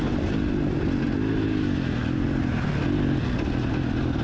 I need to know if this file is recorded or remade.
recorded